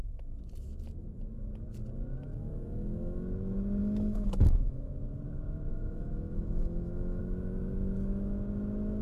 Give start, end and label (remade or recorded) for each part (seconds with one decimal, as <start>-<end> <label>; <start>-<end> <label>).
0.0-3.8 recorded; 3.8-4.9 remade; 4.9-5.7 recorded; 5.7-7.2 remade; 7.2-9.0 recorded